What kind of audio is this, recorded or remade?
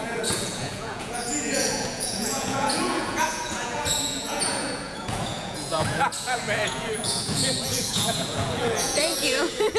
remade